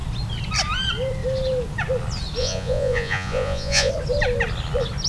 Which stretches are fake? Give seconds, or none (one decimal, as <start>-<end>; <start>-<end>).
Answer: 2.4-3.9